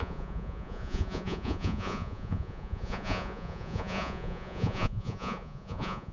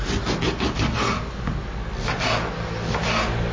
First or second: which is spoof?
first